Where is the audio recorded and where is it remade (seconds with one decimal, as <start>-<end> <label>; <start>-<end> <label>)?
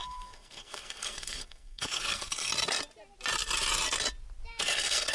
0.0-2.5 remade; 2.5-4.6 recorded; 4.6-5.1 remade